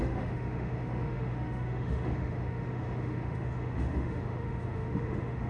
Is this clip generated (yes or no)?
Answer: yes